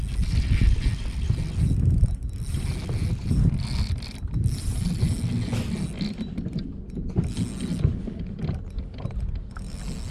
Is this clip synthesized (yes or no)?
no